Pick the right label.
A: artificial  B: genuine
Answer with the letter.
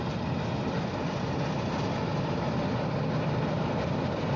B